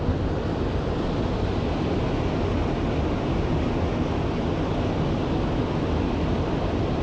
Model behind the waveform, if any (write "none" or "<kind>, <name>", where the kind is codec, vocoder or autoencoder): none